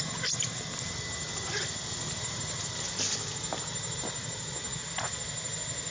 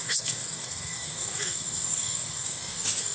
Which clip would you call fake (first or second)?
second